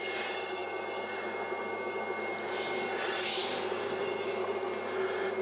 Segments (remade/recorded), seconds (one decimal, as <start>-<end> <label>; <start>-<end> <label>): 0.0-5.4 recorded

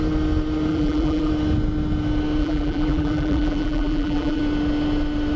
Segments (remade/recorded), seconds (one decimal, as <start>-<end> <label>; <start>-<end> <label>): 0.0-0.7 recorded; 0.7-1.3 remade; 1.3-2.4 recorded; 2.4-4.4 remade; 4.4-5.4 recorded

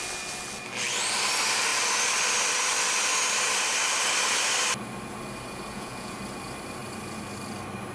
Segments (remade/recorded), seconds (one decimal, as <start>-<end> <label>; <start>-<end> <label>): 0.0-5.7 recorded; 5.7-6.2 remade; 6.2-7.9 recorded

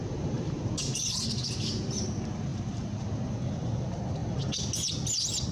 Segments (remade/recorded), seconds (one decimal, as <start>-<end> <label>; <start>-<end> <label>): 0.0-2.0 remade; 2.0-2.5 recorded; 2.5-3.0 remade; 3.0-5.5 recorded